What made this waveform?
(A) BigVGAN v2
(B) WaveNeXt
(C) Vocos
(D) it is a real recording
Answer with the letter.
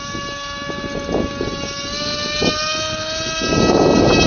D